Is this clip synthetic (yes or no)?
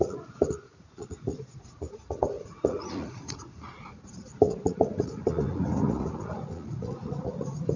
yes